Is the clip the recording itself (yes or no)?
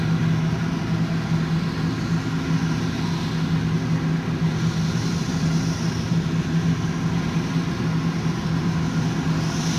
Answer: yes